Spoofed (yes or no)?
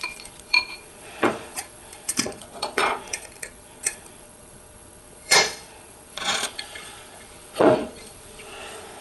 yes